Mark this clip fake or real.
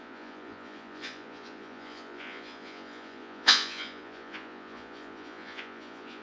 fake